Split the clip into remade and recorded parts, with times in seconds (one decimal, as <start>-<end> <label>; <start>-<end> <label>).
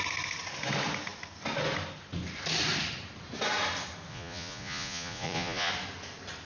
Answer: 0.0-4.1 recorded; 4.1-5.7 remade; 5.7-6.4 recorded